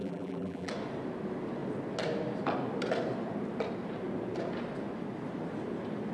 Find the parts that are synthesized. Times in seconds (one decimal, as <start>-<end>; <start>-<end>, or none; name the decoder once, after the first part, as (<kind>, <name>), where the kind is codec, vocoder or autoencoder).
0.0-0.7 (vocoder, BigVGAN v2)